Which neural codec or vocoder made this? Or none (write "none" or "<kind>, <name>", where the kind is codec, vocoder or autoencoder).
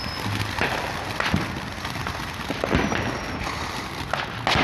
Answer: none